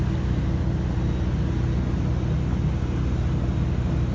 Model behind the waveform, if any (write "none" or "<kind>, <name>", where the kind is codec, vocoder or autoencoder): none